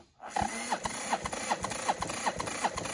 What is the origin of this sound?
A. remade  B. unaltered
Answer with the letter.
B